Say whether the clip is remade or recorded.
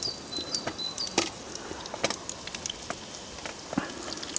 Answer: recorded